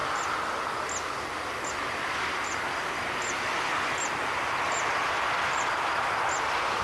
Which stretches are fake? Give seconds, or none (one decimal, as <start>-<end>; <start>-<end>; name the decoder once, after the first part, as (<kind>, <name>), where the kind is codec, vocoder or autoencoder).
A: none